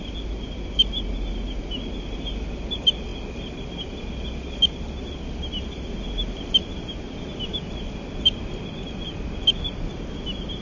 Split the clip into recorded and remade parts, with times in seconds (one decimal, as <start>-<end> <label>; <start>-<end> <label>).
0.0-10.6 recorded